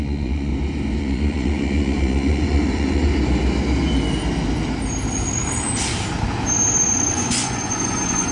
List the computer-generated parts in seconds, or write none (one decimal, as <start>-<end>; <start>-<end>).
0.0-0.5; 1.0-3.1; 6.9-8.3